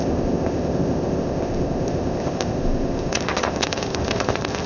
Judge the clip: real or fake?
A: fake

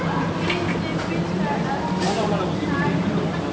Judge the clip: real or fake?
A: real